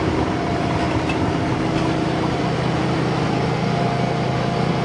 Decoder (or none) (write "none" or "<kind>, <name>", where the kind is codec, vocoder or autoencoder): none